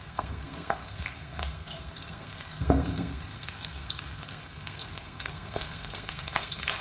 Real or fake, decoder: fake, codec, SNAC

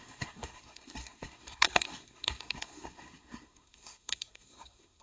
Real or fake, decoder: fake, codec, SNAC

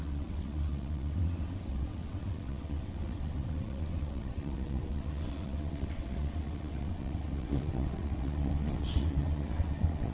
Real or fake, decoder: fake, vocoder, WaveNeXt